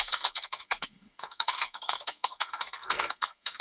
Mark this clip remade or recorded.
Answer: remade